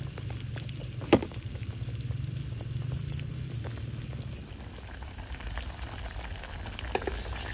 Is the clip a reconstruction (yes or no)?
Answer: no